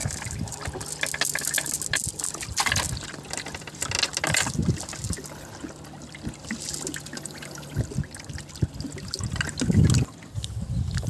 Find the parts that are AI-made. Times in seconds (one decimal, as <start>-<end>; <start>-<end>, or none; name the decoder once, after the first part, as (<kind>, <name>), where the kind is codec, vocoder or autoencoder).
none